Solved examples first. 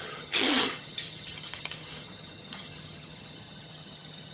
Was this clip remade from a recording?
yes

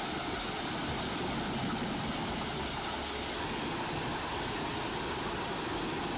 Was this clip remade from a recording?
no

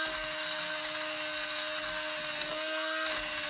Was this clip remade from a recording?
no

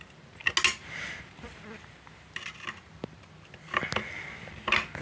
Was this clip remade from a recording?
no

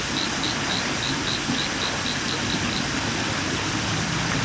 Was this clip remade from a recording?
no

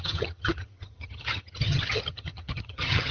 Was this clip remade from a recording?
yes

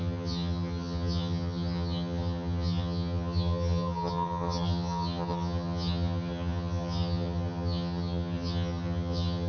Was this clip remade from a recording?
yes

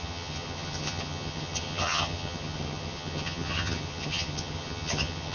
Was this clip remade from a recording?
yes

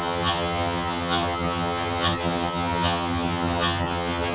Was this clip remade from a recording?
yes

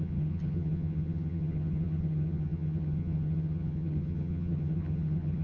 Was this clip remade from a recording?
yes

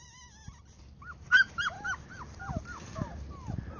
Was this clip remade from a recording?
no